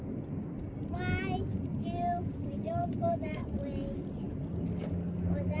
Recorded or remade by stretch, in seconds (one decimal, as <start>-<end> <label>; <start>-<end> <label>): 0.0-1.5 recorded; 1.5-2.2 remade; 2.2-2.8 recorded; 2.8-3.6 remade; 3.6-5.6 recorded